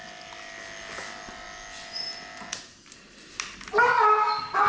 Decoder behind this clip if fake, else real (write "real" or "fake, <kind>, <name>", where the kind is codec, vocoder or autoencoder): real